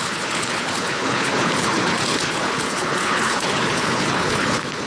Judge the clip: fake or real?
fake